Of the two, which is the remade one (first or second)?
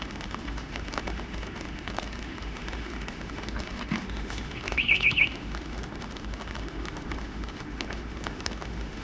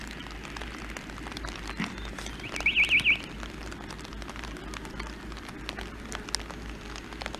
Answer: first